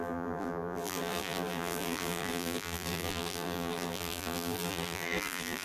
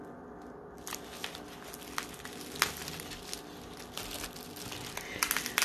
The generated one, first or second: first